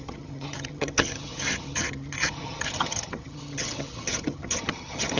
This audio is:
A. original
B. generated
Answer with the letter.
B